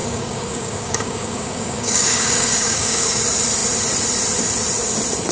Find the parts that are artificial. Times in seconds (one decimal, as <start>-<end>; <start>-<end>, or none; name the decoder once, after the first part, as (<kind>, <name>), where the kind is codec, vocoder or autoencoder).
0.0-3.2 (codec, DAC)